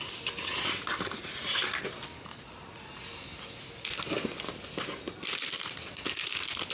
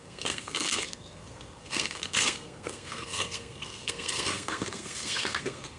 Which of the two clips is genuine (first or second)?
first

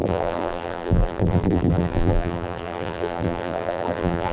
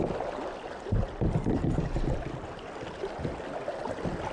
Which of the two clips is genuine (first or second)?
second